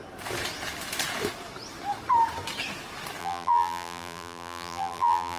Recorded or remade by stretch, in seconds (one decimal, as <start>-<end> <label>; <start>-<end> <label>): 0.0-3.2 recorded; 3.2-5.4 remade